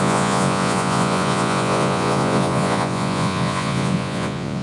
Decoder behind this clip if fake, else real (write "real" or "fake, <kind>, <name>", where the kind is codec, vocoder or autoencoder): fake, vocoder, Vocos